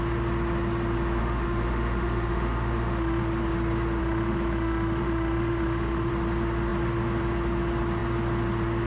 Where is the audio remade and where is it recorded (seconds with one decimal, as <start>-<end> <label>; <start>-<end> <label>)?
0.0-1.2 recorded; 1.2-3.2 remade; 3.2-4.0 recorded; 4.0-6.1 remade; 6.1-8.9 recorded